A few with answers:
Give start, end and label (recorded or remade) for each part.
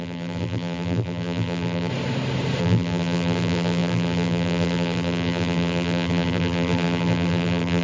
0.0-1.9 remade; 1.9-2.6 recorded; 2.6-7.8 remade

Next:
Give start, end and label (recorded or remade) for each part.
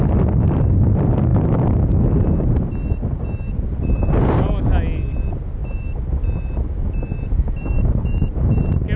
0.0-9.0 recorded